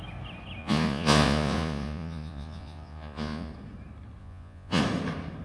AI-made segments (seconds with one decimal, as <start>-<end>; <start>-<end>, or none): 0.6-3.5; 4.2-4.8